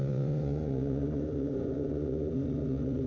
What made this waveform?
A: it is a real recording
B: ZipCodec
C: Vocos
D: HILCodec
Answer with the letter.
C